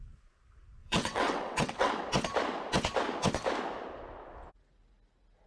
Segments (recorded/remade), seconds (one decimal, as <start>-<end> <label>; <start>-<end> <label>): 0.0-0.8 recorded; 0.8-2.0 remade; 2.0-5.5 recorded